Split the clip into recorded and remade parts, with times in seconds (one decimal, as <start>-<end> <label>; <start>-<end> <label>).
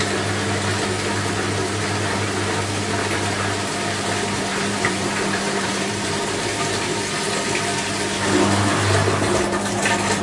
0.0-4.5 recorded; 4.5-6.1 remade; 6.1-10.2 recorded